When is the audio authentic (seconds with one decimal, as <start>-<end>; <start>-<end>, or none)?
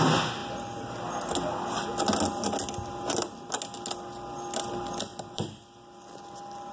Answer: 0.0-6.7